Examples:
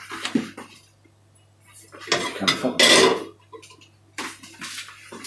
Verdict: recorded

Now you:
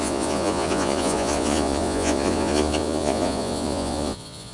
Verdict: remade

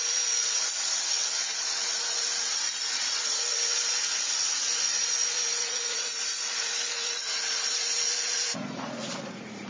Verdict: remade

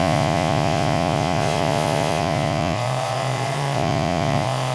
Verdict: remade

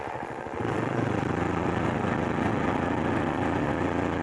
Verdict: remade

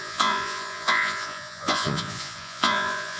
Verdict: remade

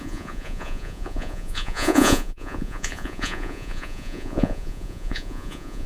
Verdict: remade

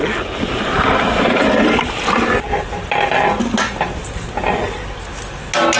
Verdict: recorded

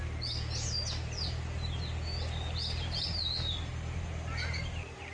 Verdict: recorded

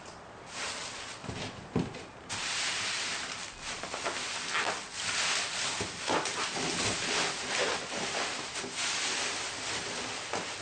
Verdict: recorded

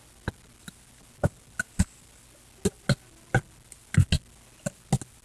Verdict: recorded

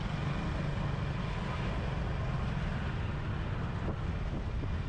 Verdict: recorded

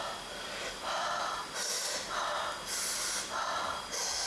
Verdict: recorded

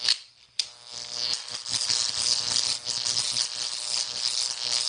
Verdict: recorded